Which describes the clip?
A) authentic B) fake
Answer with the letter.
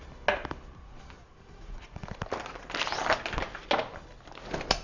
A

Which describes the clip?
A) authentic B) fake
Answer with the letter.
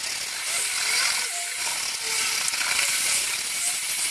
A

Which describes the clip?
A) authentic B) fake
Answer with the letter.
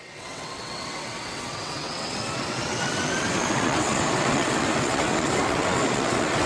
B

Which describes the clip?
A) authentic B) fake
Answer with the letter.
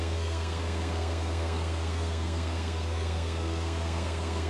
B